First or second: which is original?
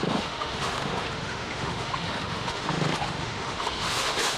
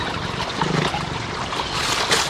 second